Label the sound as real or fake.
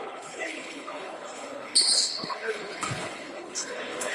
fake